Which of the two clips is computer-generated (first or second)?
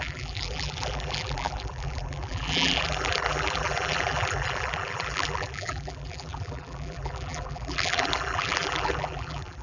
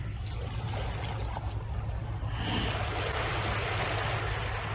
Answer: first